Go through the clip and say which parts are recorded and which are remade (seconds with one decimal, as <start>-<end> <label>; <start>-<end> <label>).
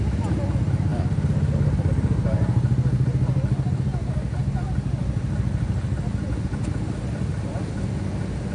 0.0-8.5 recorded